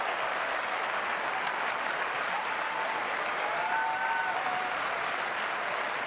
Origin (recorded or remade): recorded